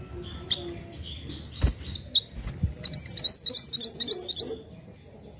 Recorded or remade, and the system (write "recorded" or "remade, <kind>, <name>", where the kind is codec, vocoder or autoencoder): recorded